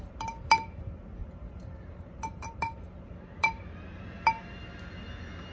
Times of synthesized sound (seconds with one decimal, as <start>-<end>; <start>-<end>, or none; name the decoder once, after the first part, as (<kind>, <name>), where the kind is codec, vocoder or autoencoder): 1.2-2.6 (vocoder, BigVGAN v2)